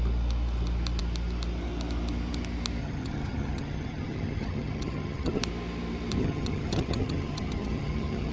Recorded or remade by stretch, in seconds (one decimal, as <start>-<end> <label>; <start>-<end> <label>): 0.0-2.8 recorded; 2.8-5.4 remade; 5.4-6.2 recorded; 6.2-8.3 remade

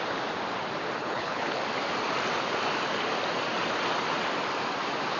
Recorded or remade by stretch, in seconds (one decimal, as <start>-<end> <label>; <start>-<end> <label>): 0.0-1.0 recorded; 1.0-1.6 remade; 1.6-5.2 recorded